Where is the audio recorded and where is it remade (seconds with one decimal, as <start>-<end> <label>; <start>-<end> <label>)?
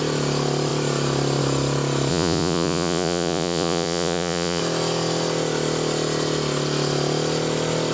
0.0-2.1 recorded; 2.1-4.6 remade; 4.6-7.9 recorded